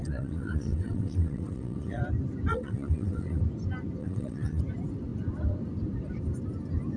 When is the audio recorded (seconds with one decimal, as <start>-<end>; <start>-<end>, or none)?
2.0-2.5; 3.4-4.0; 4.6-7.0